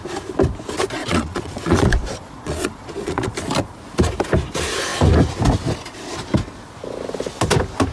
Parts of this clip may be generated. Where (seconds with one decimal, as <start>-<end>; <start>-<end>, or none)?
1.0-3.3